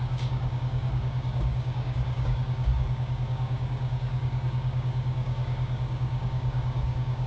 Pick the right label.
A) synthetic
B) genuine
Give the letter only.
A